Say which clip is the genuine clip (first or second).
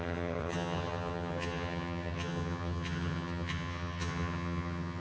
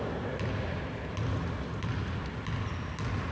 second